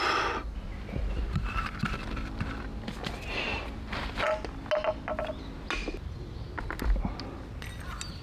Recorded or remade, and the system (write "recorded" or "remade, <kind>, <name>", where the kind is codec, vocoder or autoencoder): recorded